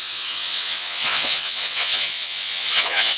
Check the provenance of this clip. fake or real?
fake